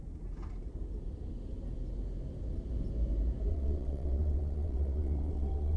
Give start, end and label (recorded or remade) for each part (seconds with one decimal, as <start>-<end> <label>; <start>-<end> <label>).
0.0-3.5 recorded; 3.5-5.8 remade